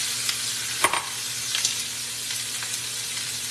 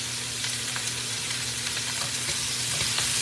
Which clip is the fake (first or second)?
second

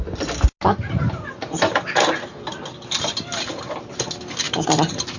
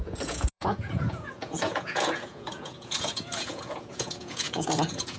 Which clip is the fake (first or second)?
second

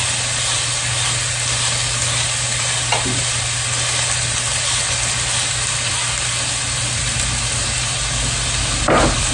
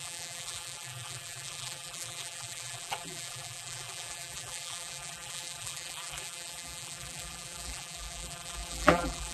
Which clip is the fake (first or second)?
second